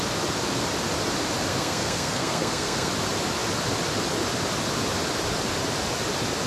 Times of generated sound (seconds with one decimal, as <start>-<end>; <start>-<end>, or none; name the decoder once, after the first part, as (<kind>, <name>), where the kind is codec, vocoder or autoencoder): 1.5-2.9 (codec, SNAC)